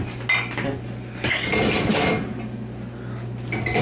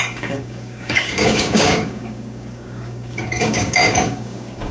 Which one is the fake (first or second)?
second